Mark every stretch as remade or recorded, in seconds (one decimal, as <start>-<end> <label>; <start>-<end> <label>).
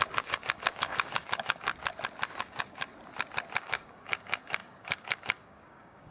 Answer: 0.0-1.7 remade; 1.7-2.4 recorded; 2.4-2.9 remade; 2.9-3.6 recorded; 3.6-6.1 remade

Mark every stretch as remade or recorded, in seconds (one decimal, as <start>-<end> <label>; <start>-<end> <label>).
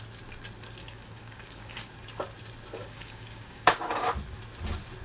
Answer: 0.0-0.8 recorded; 0.8-1.9 remade; 1.9-2.8 recorded; 2.8-4.0 remade; 4.0-5.0 recorded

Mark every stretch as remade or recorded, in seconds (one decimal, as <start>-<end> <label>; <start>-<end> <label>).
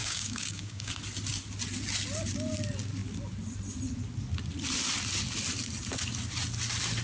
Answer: 0.0-0.9 remade; 0.9-7.0 recorded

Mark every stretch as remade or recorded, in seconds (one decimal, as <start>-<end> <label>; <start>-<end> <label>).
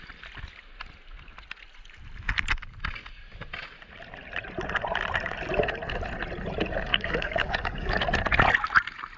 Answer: 0.0-6.9 recorded; 6.9-8.0 remade; 8.0-9.2 recorded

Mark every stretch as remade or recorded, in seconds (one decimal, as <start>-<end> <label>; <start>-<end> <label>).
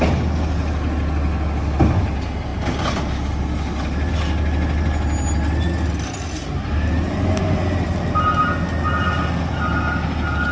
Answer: 0.0-10.5 recorded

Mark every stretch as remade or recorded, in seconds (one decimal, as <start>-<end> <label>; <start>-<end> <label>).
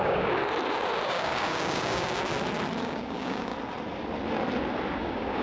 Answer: 0.0-0.4 remade; 0.4-1.1 recorded; 1.1-2.3 remade; 2.3-2.8 recorded; 2.8-3.5 remade; 3.5-5.0 recorded; 5.0-5.4 remade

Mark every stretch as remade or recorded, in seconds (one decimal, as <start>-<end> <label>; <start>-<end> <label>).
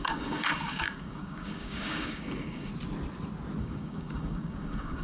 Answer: 0.0-2.7 remade; 2.7-3.6 recorded; 3.6-5.0 remade